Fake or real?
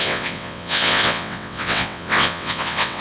fake